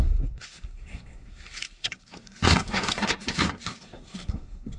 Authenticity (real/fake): fake